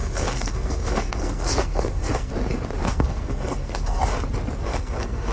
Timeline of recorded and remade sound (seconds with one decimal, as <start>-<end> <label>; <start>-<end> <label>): 0.0-2.3 remade; 2.3-2.8 recorded; 2.8-4.0 remade; 4.0-4.7 recorded; 4.7-5.3 remade